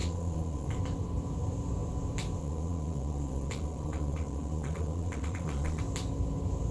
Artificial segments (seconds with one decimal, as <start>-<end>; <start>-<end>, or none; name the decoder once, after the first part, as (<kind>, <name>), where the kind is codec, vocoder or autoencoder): 0.0-0.7 (vocoder, Vocos); 2.4-5.8